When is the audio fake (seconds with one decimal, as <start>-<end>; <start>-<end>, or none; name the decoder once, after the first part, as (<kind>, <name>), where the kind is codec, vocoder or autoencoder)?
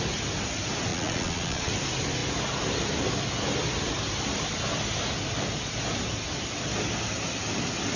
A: 0.9-1.7 (vocoder, Vocos)